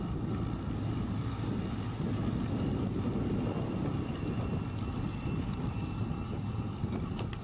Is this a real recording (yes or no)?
yes